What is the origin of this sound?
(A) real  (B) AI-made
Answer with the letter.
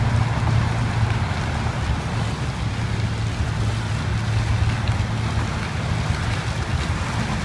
A